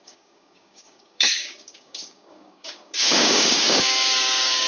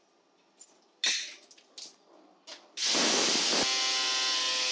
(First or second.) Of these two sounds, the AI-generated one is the first